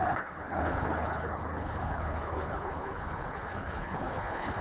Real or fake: fake